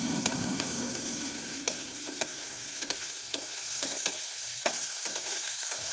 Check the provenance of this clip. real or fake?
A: fake